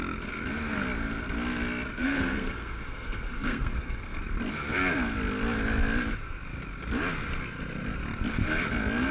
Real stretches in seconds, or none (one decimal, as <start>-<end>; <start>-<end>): 0.0-2.0; 4.2-9.1